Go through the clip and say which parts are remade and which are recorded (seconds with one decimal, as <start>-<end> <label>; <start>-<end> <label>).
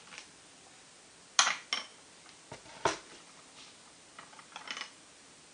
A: 0.0-5.5 recorded